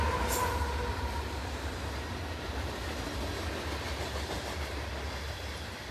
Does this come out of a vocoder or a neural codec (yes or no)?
no